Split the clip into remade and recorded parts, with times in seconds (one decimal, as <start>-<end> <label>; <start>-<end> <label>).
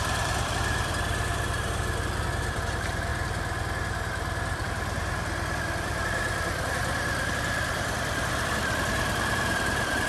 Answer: 0.0-3.1 remade; 3.1-5.6 recorded; 5.6-6.0 remade; 6.0-7.4 recorded; 7.4-10.1 remade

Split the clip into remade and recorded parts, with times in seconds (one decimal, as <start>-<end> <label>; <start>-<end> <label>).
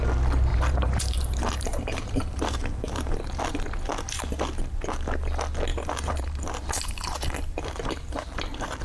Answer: 0.0-0.5 recorded; 0.5-3.2 remade; 3.2-5.7 recorded; 5.7-8.4 remade; 8.4-8.8 recorded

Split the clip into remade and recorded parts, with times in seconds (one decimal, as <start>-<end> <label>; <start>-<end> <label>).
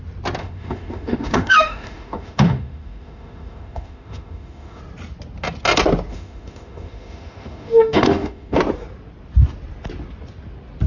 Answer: 0.0-0.4 recorded; 0.4-4.8 remade; 4.8-6.1 recorded; 6.1-8.6 remade; 8.6-10.9 recorded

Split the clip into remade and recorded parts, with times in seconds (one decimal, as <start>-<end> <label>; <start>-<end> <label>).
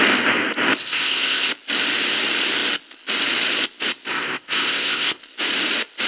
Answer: 0.0-0.8 recorded; 0.8-1.5 remade; 1.5-4.1 recorded; 4.1-5.2 remade; 5.2-6.1 recorded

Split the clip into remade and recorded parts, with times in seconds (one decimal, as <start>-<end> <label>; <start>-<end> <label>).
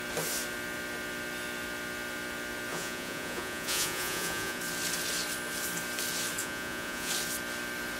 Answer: 0.0-2.7 recorded; 2.7-4.6 remade; 4.6-6.4 recorded; 6.4-7.1 remade; 7.1-8.0 recorded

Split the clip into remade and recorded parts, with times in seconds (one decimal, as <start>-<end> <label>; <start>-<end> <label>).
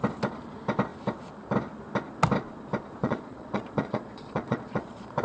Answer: 0.0-3.0 recorded; 3.0-5.2 remade